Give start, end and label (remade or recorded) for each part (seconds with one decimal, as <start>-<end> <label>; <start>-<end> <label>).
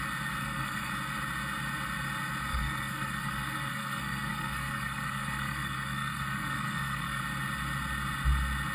0.0-0.4 recorded; 0.4-0.9 remade; 0.9-2.5 recorded; 2.5-7.2 remade; 7.2-8.7 recorded